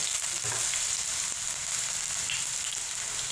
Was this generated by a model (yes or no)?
no